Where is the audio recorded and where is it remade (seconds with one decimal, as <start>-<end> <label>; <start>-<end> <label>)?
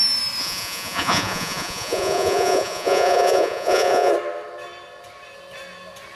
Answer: 0.0-0.4 recorded; 0.4-4.1 remade; 4.1-6.2 recorded